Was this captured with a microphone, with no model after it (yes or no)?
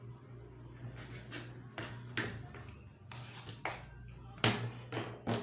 yes